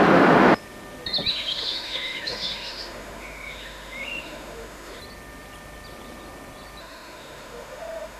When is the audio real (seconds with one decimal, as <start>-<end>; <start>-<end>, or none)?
0.0-1.3; 5.0-6.8